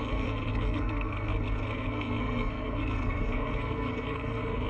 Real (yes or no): no